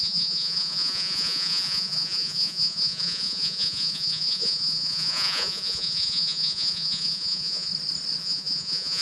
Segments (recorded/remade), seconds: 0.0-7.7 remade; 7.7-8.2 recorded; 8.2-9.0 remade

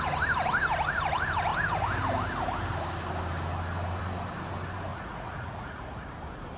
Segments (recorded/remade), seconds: 0.0-4.9 recorded; 4.9-6.1 remade; 6.1-6.6 recorded

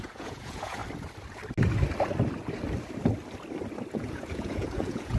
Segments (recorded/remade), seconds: 0.0-0.8 remade; 0.8-3.9 recorded; 3.9-5.2 remade

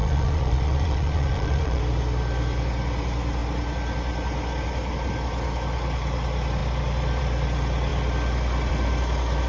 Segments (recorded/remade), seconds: 0.0-1.8 remade; 1.8-9.5 recorded

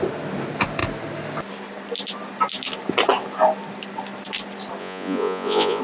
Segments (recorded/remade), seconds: 0.0-4.8 recorded; 4.8-5.8 remade

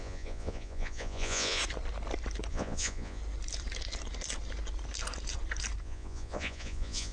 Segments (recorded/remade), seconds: 0.0-1.6 remade; 1.6-2.5 recorded; 2.5-3.2 remade; 3.2-5.8 recorded; 5.8-7.1 remade

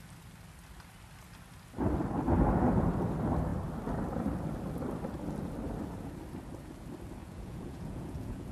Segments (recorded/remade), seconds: 0.0-7.2 recorded; 7.2-8.5 remade